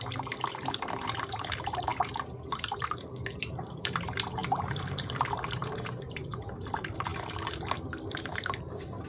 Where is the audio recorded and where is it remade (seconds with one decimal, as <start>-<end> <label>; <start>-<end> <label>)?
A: 0.0-9.1 remade